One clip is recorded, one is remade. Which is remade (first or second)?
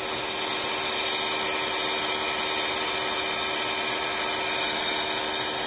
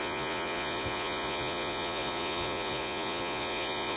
second